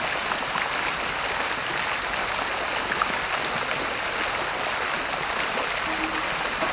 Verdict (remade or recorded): recorded